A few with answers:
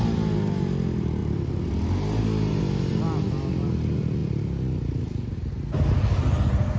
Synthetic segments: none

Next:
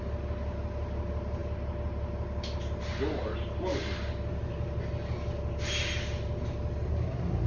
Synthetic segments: none

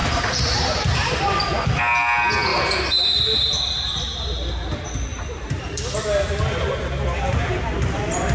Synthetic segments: 0.0-1.6; 2.5-3.6; 5.1-5.8

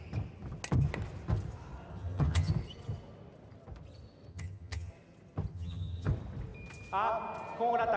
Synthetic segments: 1.9-2.5; 4.3-4.9; 5.5-6.1